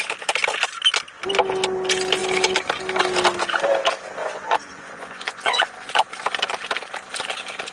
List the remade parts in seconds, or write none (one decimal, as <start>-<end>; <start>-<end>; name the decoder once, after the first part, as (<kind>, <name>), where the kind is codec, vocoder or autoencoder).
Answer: 4.2-5.9 (vocoder, Vocos)